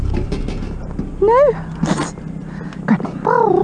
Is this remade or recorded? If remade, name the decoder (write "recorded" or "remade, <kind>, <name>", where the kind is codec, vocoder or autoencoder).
recorded